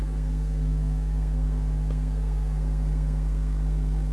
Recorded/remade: remade